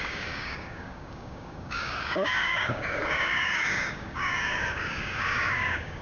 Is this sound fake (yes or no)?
yes